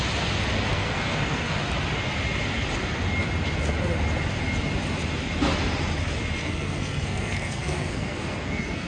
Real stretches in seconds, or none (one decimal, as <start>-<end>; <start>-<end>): 0.0-0.7; 1.6-6.4

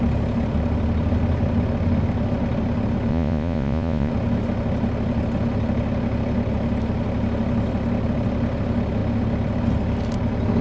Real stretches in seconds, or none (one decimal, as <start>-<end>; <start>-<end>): 0.0-3.1; 4.1-10.6

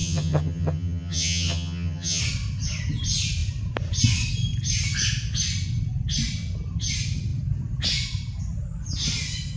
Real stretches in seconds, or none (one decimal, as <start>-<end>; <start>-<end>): 2.2-9.6

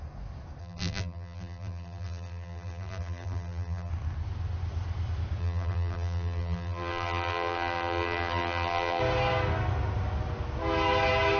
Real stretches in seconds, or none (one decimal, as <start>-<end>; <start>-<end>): 0.0-0.6; 3.9-5.4; 9.0-11.4

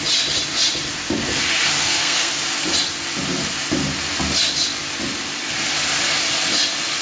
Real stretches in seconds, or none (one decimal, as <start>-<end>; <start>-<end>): 0.0-1.8; 2.3-7.0

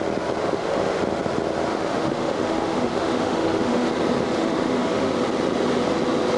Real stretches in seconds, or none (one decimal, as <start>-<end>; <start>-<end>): 0.0-0.4; 1.0-1.7; 3.9-4.4; 5.1-6.4

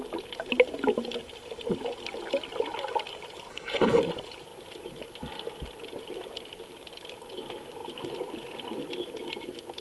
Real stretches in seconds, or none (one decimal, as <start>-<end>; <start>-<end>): 0.0-3.5; 4.0-9.8

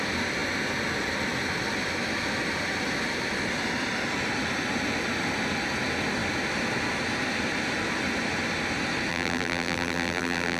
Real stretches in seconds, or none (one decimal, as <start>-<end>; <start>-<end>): 0.0-9.1